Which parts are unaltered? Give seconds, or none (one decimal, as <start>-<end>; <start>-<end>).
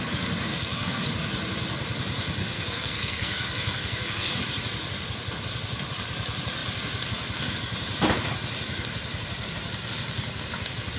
0.0-0.5; 1.0-2.4; 4.4-11.0